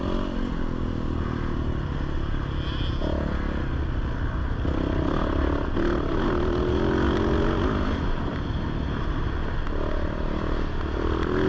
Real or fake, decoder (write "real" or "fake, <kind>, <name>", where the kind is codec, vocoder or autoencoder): real